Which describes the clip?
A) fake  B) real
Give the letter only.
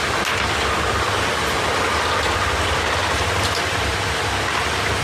B